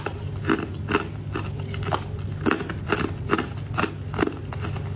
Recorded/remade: recorded